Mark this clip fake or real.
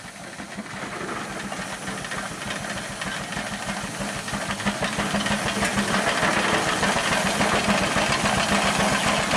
real